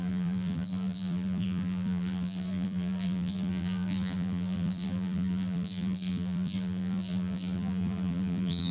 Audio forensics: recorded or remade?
remade